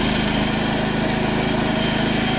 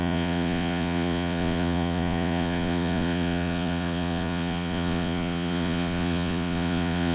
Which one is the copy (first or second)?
second